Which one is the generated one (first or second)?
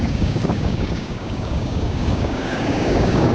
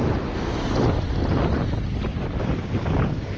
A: first